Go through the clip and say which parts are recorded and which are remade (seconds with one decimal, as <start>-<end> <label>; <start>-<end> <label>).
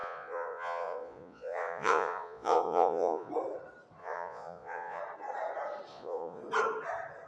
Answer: 0.0-3.3 remade; 3.3-4.0 recorded; 4.0-5.0 remade; 5.0-5.9 recorded; 5.9-6.4 remade; 6.4-7.3 recorded